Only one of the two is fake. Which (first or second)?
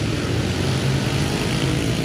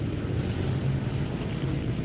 second